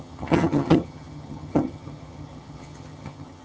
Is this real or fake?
fake